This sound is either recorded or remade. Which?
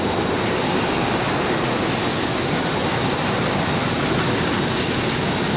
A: recorded